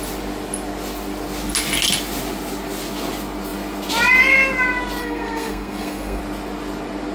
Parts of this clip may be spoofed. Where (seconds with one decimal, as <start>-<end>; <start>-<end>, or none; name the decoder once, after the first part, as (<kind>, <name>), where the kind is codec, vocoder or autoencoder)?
5.0-6.2 (codec, SNAC)